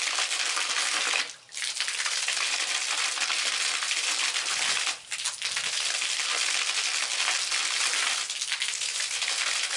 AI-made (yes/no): no